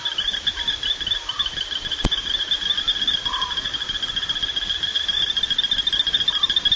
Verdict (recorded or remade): recorded